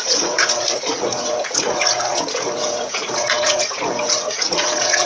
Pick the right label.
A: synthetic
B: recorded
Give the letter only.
A